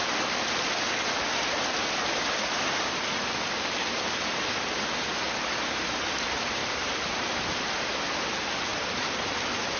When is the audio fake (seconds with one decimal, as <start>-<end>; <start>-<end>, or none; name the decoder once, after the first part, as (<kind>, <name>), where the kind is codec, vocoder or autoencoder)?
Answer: 0.0-0.5 (vocoder, BigVGAN v2); 6.6-7.7; 8.7-9.3